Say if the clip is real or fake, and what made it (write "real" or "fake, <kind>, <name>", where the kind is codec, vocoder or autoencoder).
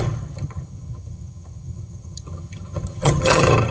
fake, vocoder, HiFi-GAN